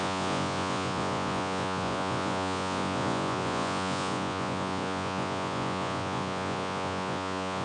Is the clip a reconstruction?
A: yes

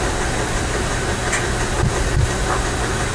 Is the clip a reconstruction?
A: no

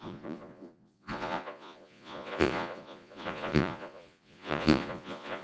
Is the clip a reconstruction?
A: yes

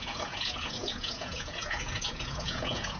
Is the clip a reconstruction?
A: yes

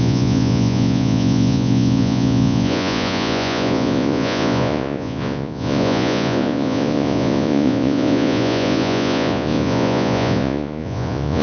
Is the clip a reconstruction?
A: yes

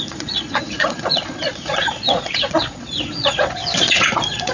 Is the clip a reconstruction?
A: yes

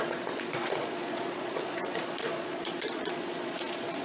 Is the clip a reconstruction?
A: yes